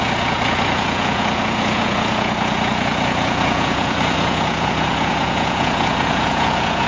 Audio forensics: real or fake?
fake